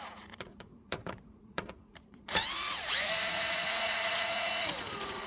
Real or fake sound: fake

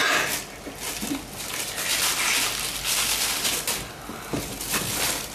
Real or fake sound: real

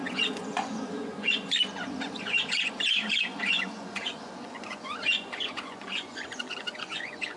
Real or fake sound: fake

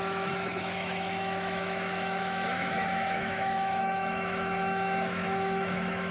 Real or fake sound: fake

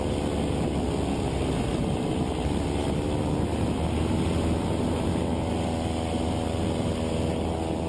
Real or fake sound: real